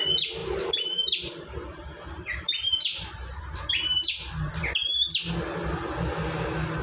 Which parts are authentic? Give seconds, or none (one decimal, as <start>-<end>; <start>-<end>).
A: 0.0-0.4; 4.5-6.8